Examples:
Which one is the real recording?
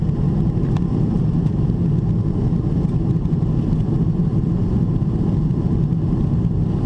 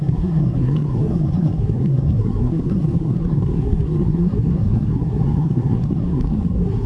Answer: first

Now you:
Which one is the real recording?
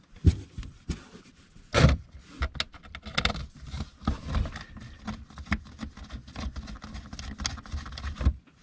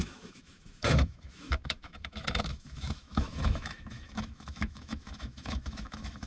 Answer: first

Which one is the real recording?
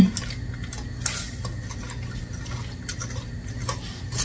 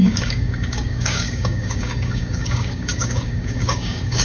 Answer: first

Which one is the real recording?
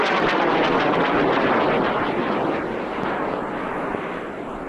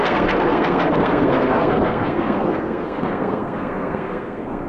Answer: first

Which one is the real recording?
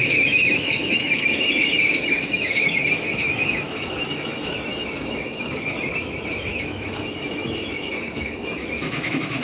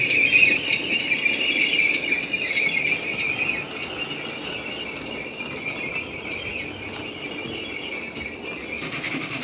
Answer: second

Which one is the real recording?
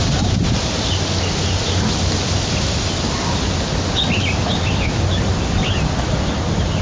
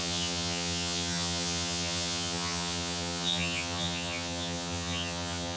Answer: first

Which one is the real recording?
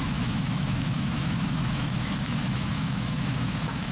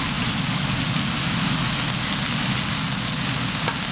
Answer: second